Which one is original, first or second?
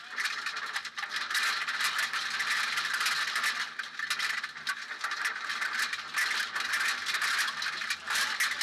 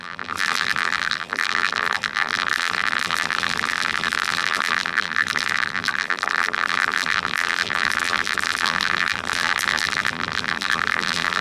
first